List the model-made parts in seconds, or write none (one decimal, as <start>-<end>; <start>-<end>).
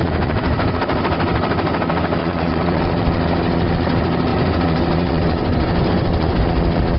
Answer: 0.0-0.8; 2.2-2.8; 4.3-6.4